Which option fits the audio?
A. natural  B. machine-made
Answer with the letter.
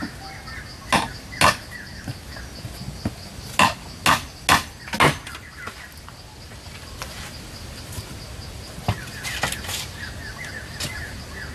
A